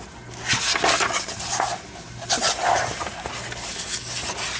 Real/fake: real